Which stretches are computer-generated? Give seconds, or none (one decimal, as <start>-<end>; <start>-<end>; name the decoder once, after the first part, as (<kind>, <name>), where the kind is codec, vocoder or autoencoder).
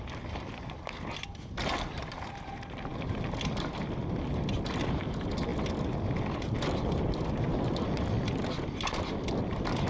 none